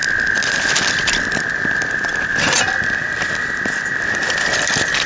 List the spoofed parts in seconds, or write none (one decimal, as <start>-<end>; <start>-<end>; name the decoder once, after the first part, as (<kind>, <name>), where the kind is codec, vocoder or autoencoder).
none